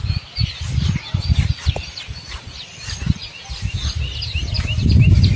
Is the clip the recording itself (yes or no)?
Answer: yes